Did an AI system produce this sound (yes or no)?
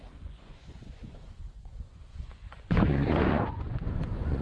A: yes